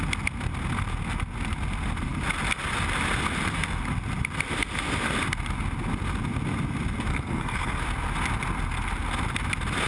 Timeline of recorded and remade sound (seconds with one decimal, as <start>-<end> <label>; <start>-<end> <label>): 0.0-7.1 recorded; 7.1-7.8 remade; 7.8-9.9 recorded